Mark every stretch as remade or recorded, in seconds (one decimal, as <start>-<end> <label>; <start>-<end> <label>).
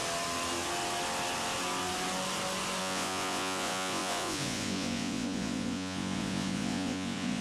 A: 0.0-2.8 recorded; 2.8-7.4 remade